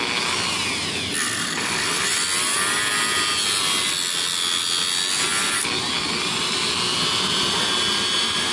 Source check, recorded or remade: recorded